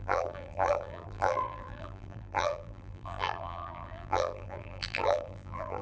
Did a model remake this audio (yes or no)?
yes